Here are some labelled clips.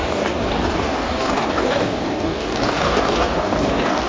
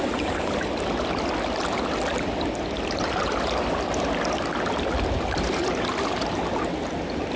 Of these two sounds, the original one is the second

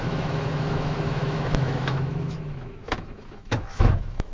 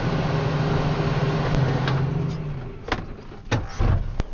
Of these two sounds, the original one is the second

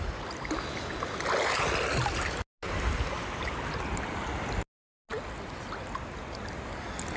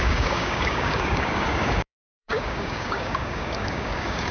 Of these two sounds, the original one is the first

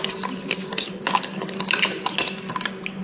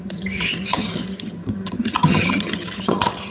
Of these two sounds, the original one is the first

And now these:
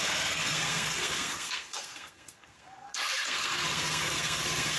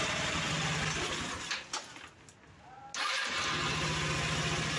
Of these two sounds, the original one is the second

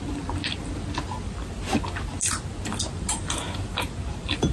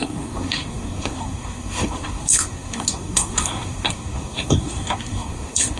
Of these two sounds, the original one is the first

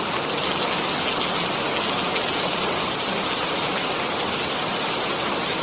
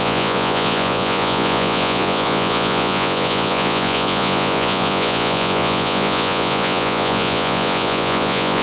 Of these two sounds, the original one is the first